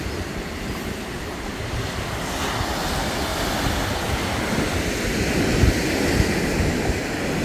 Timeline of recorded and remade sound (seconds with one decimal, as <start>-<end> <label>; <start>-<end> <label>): 0.0-7.4 recorded